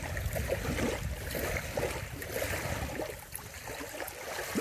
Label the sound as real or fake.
real